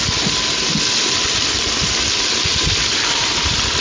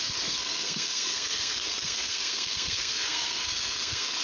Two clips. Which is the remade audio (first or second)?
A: second